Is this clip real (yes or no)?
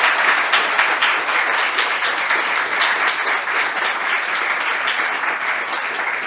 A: yes